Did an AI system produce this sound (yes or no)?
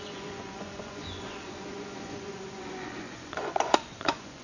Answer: yes